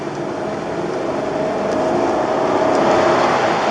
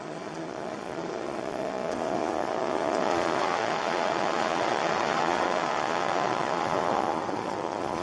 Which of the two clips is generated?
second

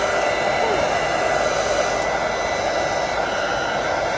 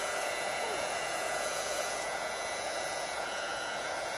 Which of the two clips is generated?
second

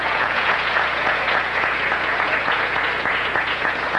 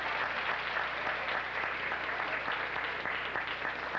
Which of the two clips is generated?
first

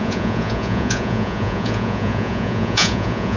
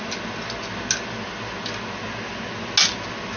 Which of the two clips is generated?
first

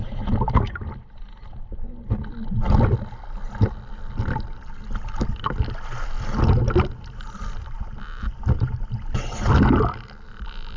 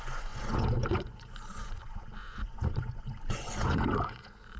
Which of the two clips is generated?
second